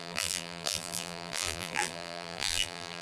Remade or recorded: remade